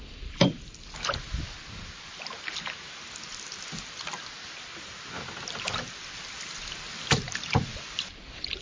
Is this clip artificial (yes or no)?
no